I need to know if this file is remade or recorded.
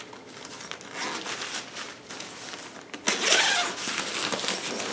recorded